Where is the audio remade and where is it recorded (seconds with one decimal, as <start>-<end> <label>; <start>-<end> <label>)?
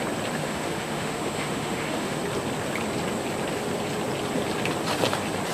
0.0-0.4 recorded; 0.4-2.2 remade; 2.2-5.5 recorded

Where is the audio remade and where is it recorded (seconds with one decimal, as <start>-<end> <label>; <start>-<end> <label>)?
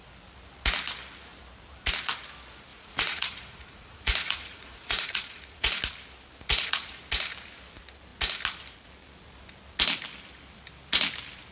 0.0-2.7 recorded; 2.7-5.8 remade; 5.8-6.5 recorded; 6.5-7.0 remade; 7.0-11.5 recorded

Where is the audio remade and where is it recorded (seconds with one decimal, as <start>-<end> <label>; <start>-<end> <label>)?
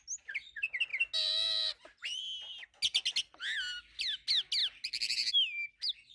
0.0-6.1 recorded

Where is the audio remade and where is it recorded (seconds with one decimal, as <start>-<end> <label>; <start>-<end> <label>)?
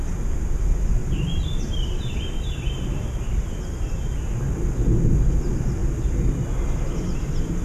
0.0-1.0 recorded; 1.0-3.9 remade; 3.9-7.6 recorded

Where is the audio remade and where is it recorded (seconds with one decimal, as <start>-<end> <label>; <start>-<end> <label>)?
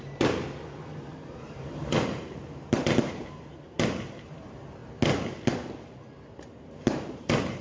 0.0-4.8 remade; 4.8-6.6 recorded; 6.6-7.6 remade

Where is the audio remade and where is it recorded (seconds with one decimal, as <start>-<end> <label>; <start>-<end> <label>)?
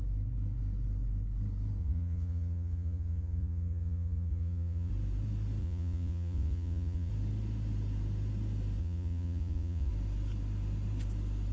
0.0-1.8 recorded; 1.8-4.9 remade; 4.9-5.6 recorded; 5.6-7.1 remade; 7.1-8.8 recorded; 8.8-9.9 remade; 9.9-11.5 recorded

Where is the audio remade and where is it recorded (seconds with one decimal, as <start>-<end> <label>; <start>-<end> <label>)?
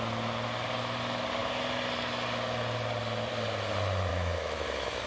0.0-4.1 recorded; 4.1-5.1 remade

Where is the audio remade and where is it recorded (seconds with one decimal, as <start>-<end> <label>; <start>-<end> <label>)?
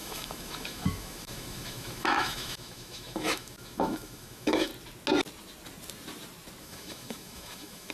0.0-4.7 remade; 4.7-6.6 recorded; 6.6-7.9 remade